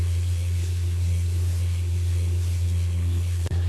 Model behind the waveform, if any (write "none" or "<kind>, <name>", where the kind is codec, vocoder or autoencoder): codec, SNAC